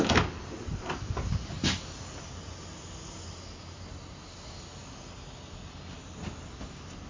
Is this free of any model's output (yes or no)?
yes